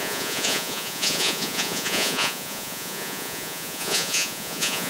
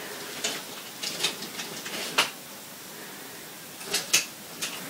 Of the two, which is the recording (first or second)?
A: second